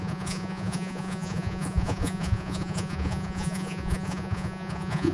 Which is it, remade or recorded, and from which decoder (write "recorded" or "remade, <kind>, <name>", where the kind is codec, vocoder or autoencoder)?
remade, vocoder, Vocos